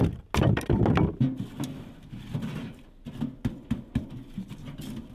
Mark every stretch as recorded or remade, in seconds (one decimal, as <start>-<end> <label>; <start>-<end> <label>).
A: 0.0-5.1 recorded

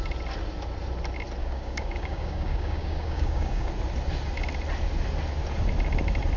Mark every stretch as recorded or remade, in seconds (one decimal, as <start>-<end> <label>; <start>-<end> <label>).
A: 0.0-1.4 recorded; 1.4-3.7 remade; 3.7-6.4 recorded